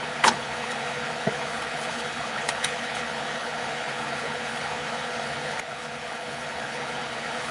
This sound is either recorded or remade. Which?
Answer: remade